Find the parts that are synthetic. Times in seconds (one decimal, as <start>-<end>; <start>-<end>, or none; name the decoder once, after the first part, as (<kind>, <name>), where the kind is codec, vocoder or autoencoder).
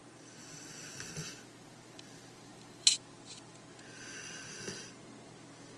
none